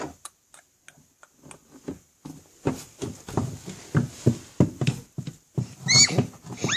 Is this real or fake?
real